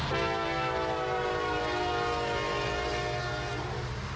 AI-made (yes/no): no